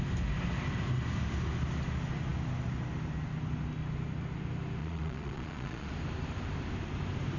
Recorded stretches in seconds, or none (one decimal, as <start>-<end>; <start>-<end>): 0.0-4.8; 5.9-7.4